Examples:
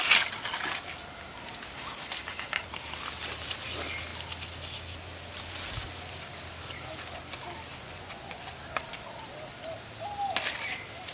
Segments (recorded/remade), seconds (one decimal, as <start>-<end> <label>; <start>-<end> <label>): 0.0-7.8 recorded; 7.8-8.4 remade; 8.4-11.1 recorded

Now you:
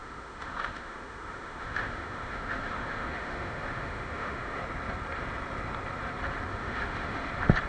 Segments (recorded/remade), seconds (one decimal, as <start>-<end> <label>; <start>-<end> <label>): 0.0-4.6 remade; 4.6-6.5 recorded; 6.5-7.3 remade; 7.3-7.7 recorded

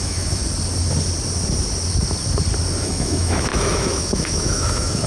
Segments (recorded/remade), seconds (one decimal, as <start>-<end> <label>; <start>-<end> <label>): 0.0-0.4 remade; 0.4-2.8 recorded; 2.8-5.1 remade

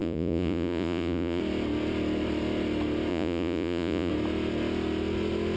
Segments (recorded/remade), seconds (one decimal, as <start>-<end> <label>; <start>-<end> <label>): 0.0-1.4 remade; 1.4-3.1 recorded; 3.1-4.1 remade; 4.1-5.6 recorded

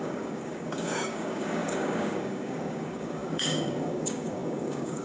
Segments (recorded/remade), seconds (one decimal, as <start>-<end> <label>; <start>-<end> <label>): 0.0-5.0 remade